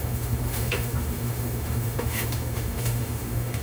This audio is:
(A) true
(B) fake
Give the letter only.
B